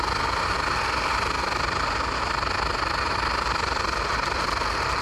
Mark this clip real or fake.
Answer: real